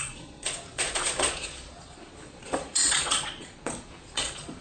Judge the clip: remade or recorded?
remade